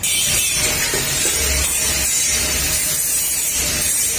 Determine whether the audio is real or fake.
fake